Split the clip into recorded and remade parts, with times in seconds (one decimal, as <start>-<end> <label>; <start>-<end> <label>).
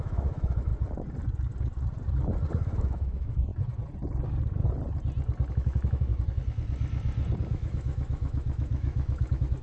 0.0-0.7 remade; 0.7-2.5 recorded; 2.5-3.5 remade; 3.5-5.5 recorded; 5.5-6.1 remade; 6.1-7.4 recorded; 7.4-9.6 remade